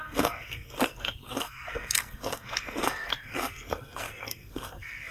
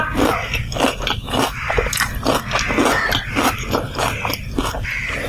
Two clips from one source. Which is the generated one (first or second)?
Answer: first